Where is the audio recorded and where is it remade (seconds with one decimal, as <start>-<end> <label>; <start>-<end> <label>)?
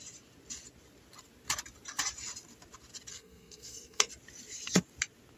0.0-3.1 recorded; 3.1-4.1 remade; 4.1-5.4 recorded